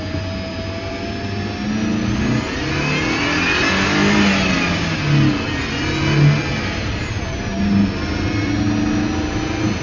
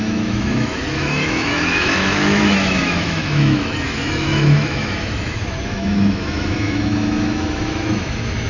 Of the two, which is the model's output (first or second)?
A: second